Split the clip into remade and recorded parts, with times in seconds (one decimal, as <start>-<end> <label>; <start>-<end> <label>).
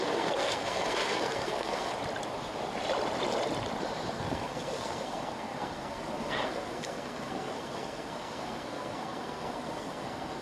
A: 0.0-1.9 remade; 1.9-4.1 recorded; 4.1-10.4 remade